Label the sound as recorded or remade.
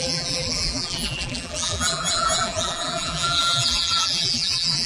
remade